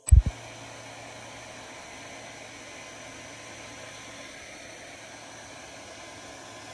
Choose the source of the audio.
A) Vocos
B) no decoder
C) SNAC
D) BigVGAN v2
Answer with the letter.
B